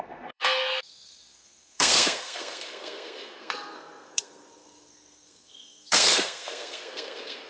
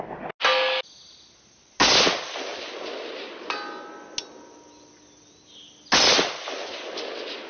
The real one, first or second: second